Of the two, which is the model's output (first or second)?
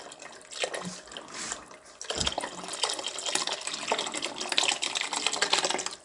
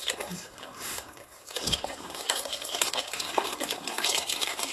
second